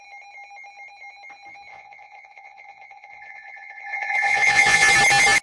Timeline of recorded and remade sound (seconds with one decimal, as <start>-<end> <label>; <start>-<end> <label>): 0.0-1.7 recorded; 1.7-4.9 remade; 4.9-5.4 recorded

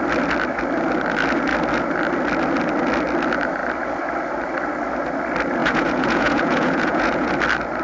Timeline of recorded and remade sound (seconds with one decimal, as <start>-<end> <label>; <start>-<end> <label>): 0.0-5.6 recorded; 5.6-7.3 remade; 7.3-7.8 recorded

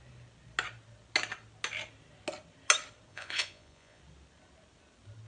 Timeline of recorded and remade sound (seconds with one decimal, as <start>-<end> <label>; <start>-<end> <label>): 0.0-3.1 recorded; 3.1-4.0 remade; 4.0-5.3 recorded

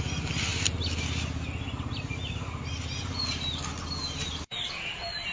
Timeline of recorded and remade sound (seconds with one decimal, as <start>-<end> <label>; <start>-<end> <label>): 0.0-5.3 recorded